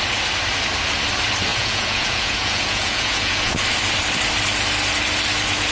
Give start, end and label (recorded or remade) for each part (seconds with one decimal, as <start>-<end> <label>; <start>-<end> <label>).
0.0-1.5 recorded; 1.5-3.6 remade; 3.6-5.7 recorded